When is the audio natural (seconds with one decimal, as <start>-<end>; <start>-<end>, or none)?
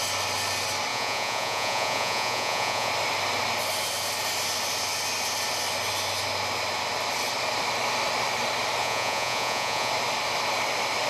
0.0-0.9; 2.9-8.8; 9.9-11.1